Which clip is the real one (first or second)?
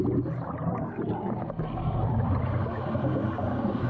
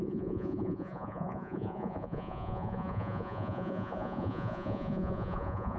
first